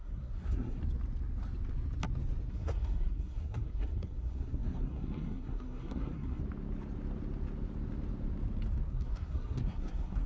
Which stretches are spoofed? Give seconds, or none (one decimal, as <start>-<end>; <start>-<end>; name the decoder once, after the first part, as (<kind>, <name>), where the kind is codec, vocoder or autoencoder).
0.0-0.8 (codec, SNAC); 2.5-6.4; 8.9-10.3